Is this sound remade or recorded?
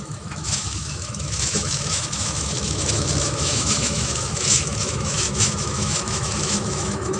remade